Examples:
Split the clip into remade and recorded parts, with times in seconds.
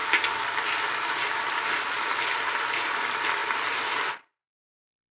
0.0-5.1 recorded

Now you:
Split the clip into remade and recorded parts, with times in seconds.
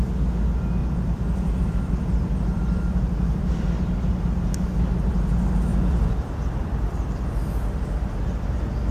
0.0-0.8 recorded; 0.8-3.6 remade; 3.6-5.7 recorded; 5.7-8.1 remade; 8.1-8.9 recorded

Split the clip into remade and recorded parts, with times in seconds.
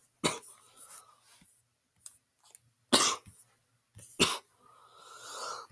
0.0-5.7 recorded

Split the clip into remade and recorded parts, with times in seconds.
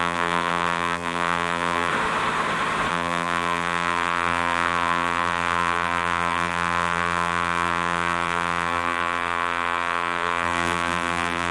0.0-1.9 remade; 1.9-2.9 recorded; 2.9-11.5 remade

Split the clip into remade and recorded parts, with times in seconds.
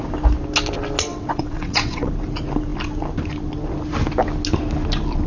0.0-1.1 recorded; 1.1-2.1 remade; 2.1-5.3 recorded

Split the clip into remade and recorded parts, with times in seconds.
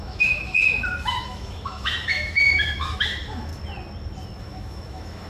0.0-3.5 remade; 3.5-4.4 recorded; 4.4-5.3 remade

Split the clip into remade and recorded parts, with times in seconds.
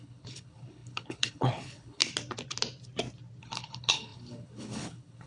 0.0-2.0 remade; 2.0-3.4 recorded; 3.4-5.3 remade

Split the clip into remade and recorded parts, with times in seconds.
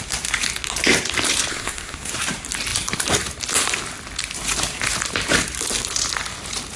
0.0-1.5 recorded; 1.5-2.1 remade; 2.1-6.8 recorded